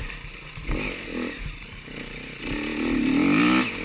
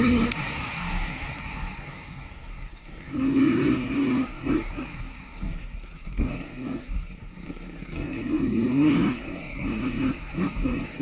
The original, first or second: first